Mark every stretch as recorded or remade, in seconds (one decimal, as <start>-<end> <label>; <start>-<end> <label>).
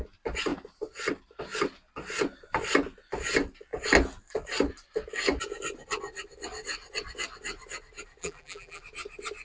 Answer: 0.0-8.2 recorded; 8.2-8.8 remade; 8.8-9.4 recorded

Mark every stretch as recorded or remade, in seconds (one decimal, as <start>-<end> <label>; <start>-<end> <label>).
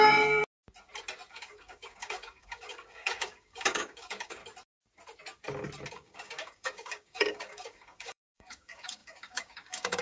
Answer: 0.0-0.4 remade; 0.4-1.3 recorded; 1.3-4.4 remade; 4.4-5.9 recorded; 5.9-10.0 remade